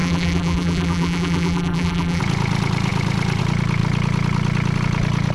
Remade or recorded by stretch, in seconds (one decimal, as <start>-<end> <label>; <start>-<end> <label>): 0.0-2.2 remade; 2.2-5.3 recorded